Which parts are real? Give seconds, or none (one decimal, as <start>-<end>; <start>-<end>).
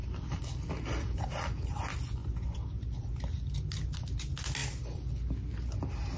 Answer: 0.0-2.2; 2.8-6.2